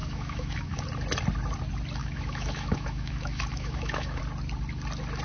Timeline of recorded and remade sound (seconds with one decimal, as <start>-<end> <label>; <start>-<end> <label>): 0.0-0.8 remade; 0.8-2.0 recorded; 2.0-4.2 remade; 4.2-5.2 recorded